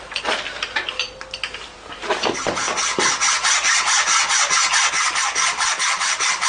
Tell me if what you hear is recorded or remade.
recorded